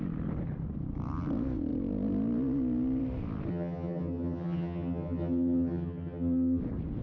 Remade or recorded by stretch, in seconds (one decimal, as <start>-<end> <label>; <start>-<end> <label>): 0.0-3.5 recorded; 3.5-6.6 remade; 6.6-7.0 recorded